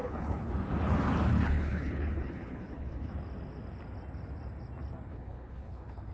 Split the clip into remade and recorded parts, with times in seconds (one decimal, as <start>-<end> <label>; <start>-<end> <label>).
0.0-0.5 remade; 0.5-1.3 recorded; 1.3-3.1 remade; 3.1-5.1 recorded; 5.1-6.1 remade